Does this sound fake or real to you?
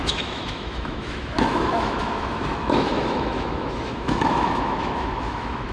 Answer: fake